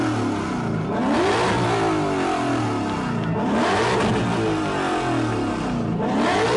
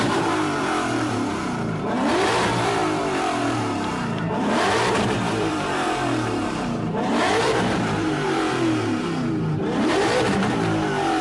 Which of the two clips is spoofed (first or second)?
second